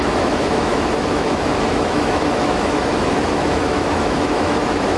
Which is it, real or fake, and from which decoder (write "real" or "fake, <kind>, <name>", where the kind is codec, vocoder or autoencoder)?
fake, autoencoder, DAC-VAE